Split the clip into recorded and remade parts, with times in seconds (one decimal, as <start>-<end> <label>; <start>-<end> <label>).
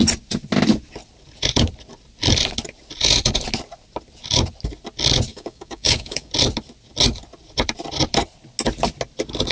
0.0-5.3 recorded; 5.3-6.3 remade; 6.3-9.5 recorded